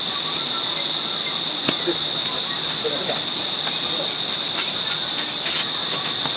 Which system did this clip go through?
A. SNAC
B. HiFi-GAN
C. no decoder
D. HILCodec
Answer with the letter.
C